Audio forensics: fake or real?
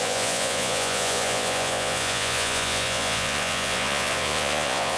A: fake